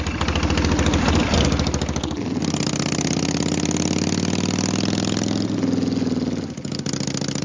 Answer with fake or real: real